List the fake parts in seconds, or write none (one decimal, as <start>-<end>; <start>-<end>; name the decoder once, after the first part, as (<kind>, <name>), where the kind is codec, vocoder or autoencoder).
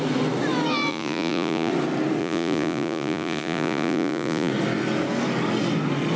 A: 0.9-1.7 (vocoder, Vocos); 2.2-4.5